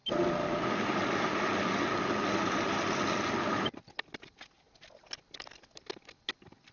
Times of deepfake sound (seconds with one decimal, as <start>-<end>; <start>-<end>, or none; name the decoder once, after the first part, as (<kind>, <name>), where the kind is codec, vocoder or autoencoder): none